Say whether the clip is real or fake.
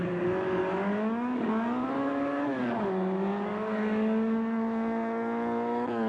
fake